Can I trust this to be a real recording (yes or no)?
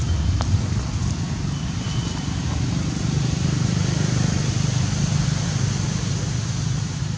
yes